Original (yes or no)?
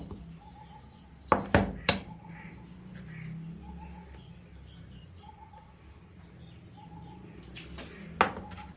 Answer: yes